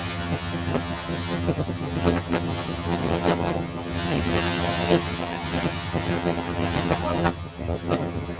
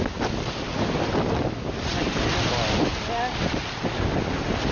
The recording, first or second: second